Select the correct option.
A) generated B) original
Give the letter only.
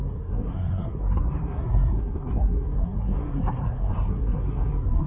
A